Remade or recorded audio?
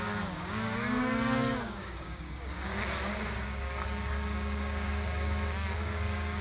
remade